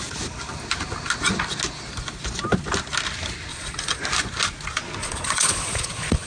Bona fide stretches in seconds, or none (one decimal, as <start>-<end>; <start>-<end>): 0.0-3.5; 4.0-5.0